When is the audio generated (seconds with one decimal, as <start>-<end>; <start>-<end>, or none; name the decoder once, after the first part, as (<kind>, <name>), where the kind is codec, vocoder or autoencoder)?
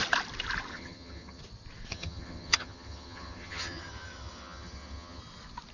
0.7-1.4 (vocoder, HiFi-GAN); 1.9-5.2